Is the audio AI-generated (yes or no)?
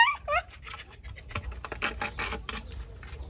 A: no